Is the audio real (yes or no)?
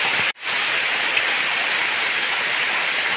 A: no